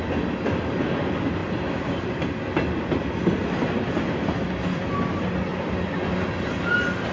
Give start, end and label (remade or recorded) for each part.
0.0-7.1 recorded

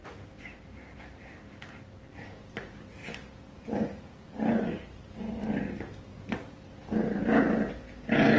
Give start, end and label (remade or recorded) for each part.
0.0-8.4 recorded